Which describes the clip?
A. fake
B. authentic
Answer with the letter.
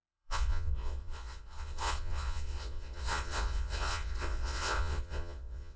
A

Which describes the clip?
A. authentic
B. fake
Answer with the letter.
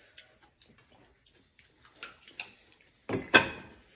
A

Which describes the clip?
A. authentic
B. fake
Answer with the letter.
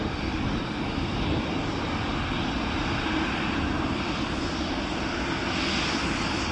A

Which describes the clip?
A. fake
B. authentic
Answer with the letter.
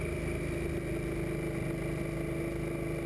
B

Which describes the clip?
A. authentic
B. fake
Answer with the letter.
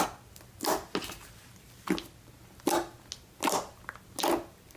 A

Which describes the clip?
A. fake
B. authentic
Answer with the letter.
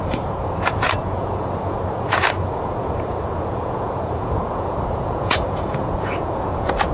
A